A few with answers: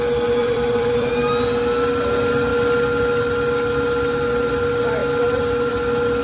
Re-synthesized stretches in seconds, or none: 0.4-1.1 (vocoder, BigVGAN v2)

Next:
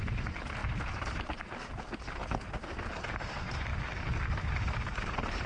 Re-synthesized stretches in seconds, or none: 0.0-2.2 (vocoder, BigVGAN v2); 3.1-3.7; 4.3-5.5

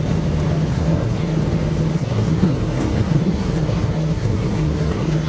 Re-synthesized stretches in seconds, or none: 0.7-1.4 (codec, SNAC); 1.9-5.3

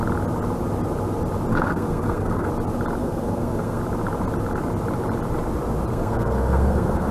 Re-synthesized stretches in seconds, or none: 1.5-2.5 (codec, SNAC); 3.0-3.8; 5.9-7.1

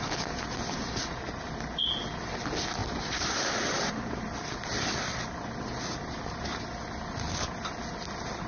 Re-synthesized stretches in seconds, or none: none

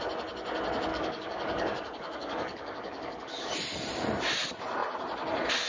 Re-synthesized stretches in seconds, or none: 0.9-3.5 (codec, DAC)

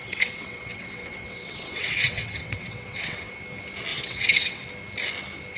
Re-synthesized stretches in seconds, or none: 0.0-3.4 (vocoder, WaveNeXt); 3.9-4.6